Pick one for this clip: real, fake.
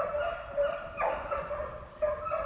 real